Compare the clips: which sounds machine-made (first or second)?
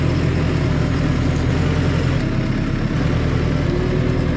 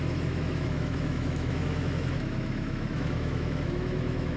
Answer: second